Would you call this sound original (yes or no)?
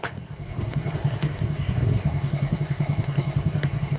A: no